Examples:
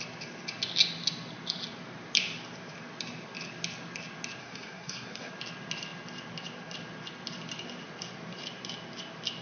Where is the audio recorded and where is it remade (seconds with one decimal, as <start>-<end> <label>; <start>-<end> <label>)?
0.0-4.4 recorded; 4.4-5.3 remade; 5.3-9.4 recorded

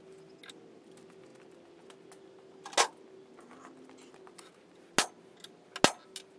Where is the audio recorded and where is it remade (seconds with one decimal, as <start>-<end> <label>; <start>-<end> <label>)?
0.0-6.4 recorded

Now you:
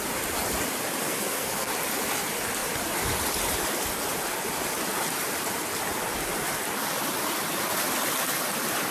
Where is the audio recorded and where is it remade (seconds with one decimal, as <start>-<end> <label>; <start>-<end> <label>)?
0.0-1.0 recorded; 1.0-1.7 remade; 1.7-8.9 recorded

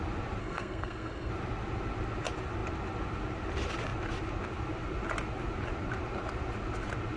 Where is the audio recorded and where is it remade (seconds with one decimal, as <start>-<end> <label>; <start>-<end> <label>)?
0.0-0.4 recorded; 0.4-1.3 remade; 1.3-7.2 recorded

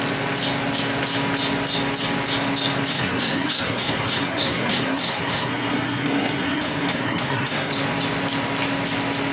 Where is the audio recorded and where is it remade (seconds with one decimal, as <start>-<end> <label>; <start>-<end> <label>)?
0.0-2.9 recorded; 2.9-7.7 remade; 7.7-9.3 recorded

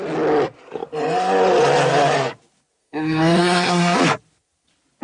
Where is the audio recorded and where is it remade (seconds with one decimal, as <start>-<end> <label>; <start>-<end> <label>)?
0.0-2.8 recorded; 2.8-4.0 remade; 4.0-5.0 recorded